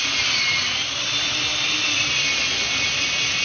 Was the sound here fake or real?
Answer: fake